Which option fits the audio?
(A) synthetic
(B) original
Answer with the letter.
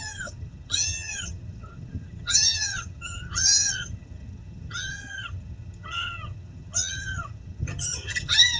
A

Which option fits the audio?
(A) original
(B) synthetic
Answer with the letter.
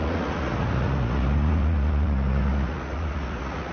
B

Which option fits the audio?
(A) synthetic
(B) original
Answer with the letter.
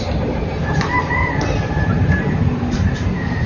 A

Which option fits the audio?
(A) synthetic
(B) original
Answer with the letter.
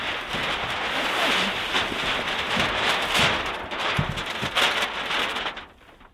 B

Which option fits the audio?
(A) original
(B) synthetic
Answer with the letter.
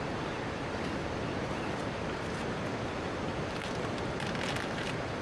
A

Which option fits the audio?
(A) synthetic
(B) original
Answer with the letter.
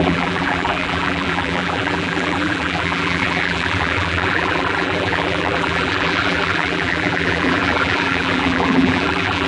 A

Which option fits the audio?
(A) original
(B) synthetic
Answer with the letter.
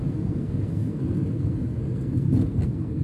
B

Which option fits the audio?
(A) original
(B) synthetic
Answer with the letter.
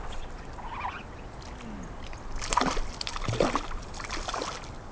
A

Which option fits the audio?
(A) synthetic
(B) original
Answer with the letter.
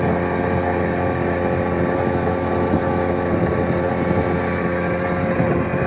B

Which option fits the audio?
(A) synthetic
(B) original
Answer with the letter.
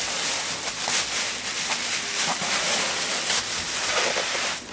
B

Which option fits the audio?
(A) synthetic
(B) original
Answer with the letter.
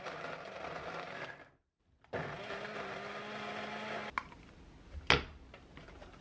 B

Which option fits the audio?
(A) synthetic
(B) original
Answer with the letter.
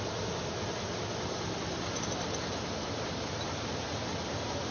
B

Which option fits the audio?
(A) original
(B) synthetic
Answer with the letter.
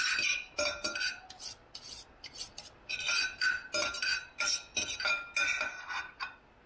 A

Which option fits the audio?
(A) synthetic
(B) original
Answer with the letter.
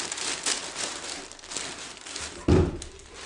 B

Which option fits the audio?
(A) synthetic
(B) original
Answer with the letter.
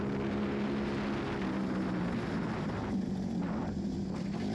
B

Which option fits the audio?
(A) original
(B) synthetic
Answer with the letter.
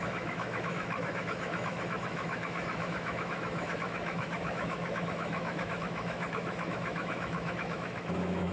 B